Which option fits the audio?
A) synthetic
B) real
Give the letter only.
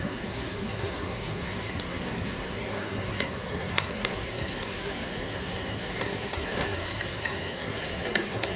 A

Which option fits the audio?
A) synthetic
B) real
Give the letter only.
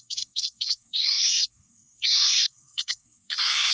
A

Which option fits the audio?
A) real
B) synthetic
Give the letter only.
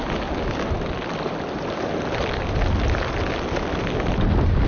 A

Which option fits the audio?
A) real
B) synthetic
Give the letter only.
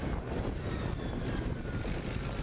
B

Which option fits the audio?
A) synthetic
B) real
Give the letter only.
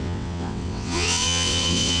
A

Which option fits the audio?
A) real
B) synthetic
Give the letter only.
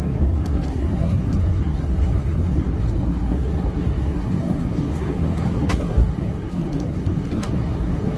B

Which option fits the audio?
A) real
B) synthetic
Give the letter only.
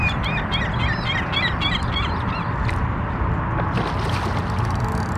A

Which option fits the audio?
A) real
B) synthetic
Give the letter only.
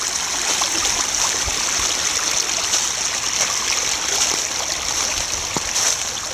A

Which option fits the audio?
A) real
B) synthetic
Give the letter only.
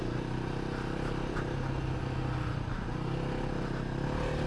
A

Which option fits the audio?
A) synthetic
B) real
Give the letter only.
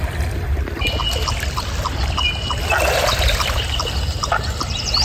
B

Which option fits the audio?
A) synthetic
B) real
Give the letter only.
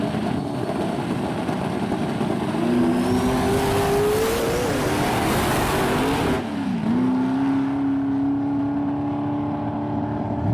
B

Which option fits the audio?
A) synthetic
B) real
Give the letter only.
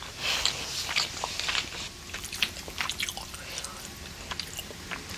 B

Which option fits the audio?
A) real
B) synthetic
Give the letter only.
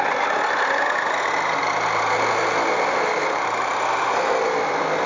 A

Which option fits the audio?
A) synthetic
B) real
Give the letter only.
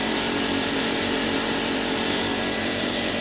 A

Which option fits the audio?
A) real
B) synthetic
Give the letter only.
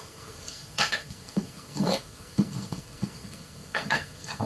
B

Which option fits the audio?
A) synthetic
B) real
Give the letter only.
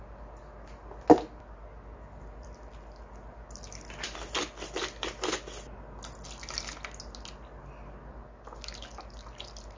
B